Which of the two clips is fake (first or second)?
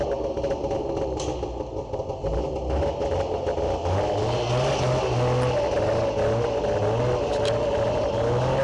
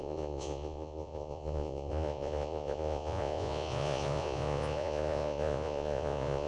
second